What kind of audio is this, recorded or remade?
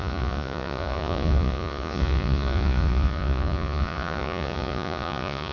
remade